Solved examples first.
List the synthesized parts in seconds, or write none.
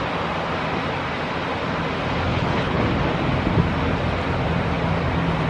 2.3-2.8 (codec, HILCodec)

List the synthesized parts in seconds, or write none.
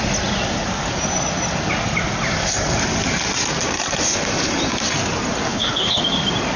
5.5-6.0 (codec, HILCodec)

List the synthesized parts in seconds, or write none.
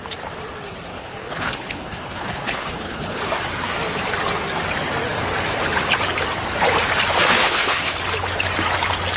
0.9-3.2 (codec, HILCodec); 7.4-8.0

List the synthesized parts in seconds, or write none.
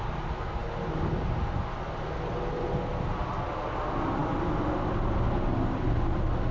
none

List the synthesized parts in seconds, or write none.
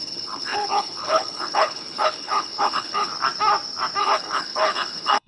0.0-3.1 (codec, HILCodec); 4.0-5.3